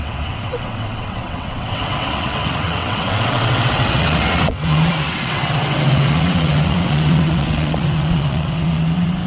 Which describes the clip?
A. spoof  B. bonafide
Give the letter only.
A